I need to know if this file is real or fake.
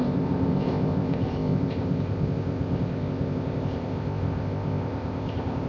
fake